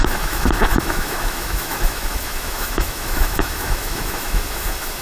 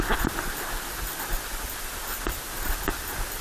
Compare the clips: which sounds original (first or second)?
second